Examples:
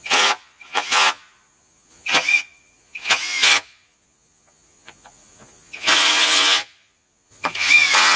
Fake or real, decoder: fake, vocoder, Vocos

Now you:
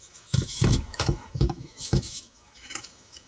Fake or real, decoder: fake, autoencoder, DAC-VAE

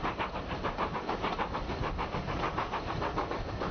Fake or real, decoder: real